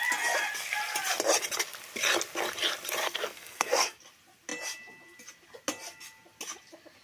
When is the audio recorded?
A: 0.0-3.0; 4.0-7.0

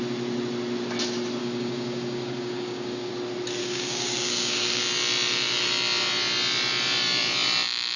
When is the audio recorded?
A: 0.0-1.4; 3.1-3.6; 4.8-8.0

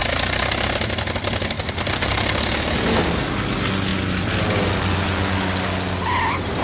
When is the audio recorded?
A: 0.0-6.6

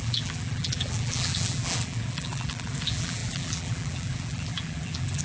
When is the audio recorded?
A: none

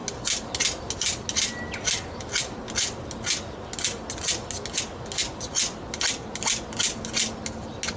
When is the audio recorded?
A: 0.0-8.0

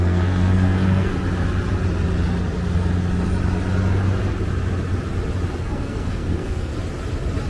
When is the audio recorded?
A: 1.1-5.6; 6.7-7.5

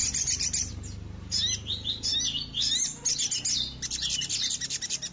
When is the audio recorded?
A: 0.0-5.1